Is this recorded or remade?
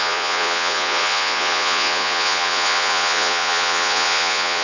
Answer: remade